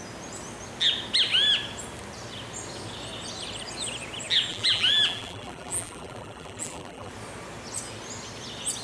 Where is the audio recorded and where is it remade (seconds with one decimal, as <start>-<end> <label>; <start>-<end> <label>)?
0.0-4.5 recorded; 4.5-7.1 remade; 7.1-8.8 recorded